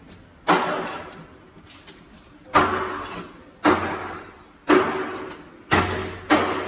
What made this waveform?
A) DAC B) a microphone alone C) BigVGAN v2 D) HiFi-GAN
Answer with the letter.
B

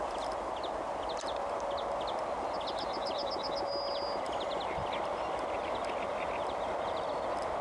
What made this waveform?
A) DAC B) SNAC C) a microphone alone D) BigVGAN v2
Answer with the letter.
C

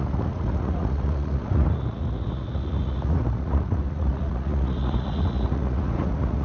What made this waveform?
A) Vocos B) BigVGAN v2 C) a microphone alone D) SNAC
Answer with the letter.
A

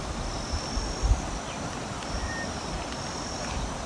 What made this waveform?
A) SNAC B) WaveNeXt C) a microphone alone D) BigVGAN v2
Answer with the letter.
C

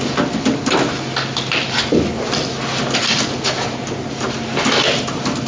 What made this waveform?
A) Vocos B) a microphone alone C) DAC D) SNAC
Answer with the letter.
B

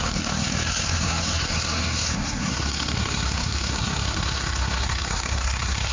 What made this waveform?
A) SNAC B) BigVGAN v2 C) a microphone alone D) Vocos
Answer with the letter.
A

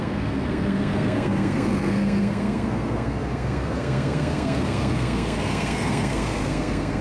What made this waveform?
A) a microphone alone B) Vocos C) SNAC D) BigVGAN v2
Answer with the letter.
C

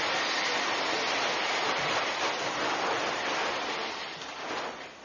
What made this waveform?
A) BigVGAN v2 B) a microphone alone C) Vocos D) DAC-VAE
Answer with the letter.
B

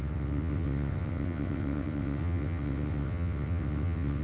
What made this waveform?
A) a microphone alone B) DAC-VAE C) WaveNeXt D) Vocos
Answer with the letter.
C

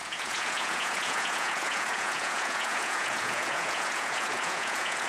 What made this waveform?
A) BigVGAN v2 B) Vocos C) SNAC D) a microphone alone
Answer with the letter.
B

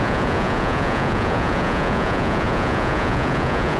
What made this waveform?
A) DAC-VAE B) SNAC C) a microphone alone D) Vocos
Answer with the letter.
D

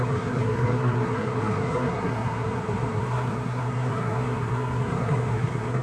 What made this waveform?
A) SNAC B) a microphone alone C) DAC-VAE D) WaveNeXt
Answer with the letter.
A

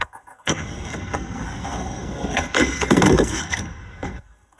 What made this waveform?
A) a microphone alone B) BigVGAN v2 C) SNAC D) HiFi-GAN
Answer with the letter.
C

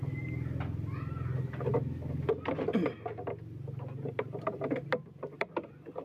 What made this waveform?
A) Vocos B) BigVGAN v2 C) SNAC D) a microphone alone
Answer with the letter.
D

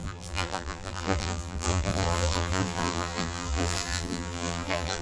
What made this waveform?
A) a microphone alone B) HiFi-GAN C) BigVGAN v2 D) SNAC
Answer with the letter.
C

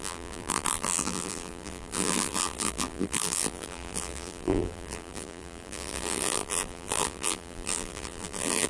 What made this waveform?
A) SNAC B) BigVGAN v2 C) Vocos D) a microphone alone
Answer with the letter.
B